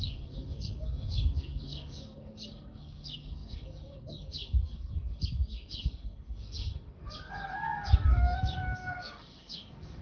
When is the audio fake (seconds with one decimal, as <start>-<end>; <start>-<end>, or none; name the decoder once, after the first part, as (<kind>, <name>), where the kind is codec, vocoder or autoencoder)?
0.0-10.0 (codec, SNAC)